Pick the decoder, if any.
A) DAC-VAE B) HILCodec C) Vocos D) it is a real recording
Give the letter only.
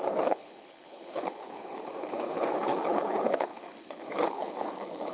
B